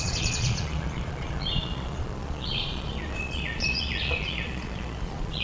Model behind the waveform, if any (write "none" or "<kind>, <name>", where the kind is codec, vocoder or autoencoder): vocoder, Vocos